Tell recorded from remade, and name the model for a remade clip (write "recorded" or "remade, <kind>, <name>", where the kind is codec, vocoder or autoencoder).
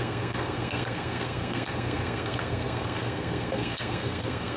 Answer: remade, codec, SNAC